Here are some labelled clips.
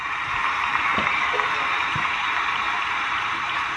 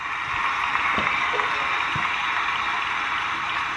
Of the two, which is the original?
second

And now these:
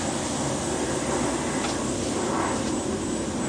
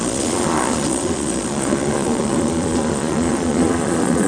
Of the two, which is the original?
first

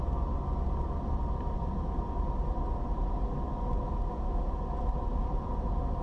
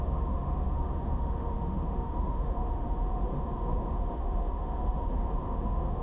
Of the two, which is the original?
first